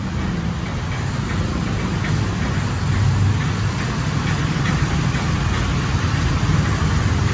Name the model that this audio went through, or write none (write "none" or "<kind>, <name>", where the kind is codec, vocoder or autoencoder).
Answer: none